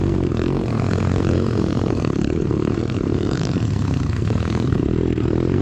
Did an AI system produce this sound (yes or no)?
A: yes